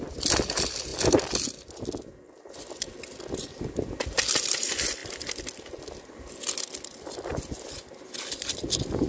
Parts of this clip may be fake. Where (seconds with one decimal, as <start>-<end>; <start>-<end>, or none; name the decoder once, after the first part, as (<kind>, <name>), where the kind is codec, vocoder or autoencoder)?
none